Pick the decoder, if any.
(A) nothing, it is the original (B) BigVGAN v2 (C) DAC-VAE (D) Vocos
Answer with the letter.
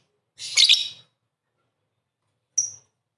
A